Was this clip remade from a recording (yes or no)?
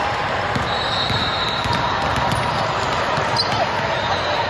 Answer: no